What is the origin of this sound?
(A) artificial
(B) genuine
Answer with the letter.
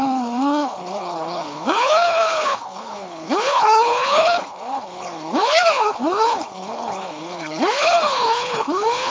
A